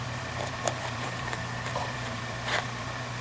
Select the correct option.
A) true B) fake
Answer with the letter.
B